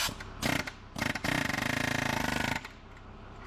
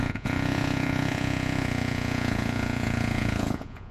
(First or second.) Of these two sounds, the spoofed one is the second